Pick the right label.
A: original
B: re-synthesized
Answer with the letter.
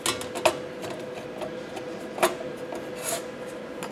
A